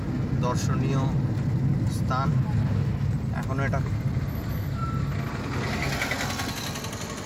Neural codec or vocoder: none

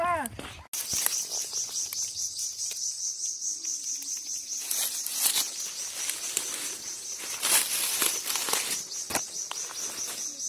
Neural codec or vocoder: none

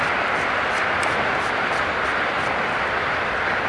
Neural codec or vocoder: vocoder, BigVGAN v2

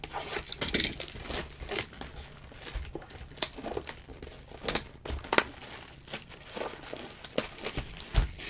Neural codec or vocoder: none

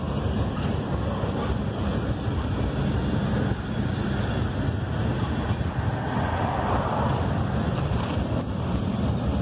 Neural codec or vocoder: none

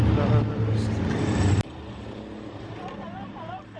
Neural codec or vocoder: none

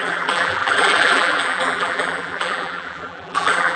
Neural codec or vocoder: vocoder, BigVGAN v2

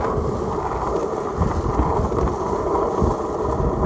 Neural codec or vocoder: none